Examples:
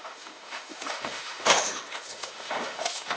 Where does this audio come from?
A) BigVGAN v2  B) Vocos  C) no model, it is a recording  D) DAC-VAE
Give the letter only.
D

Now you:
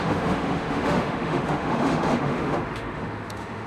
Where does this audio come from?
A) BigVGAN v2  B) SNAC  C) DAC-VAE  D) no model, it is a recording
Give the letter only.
C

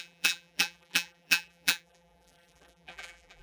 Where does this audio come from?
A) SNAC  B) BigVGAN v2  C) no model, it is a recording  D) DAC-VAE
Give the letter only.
B